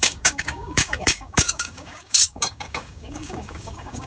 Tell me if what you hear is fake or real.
fake